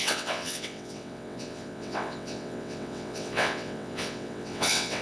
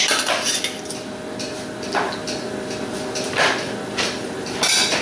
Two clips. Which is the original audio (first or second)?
second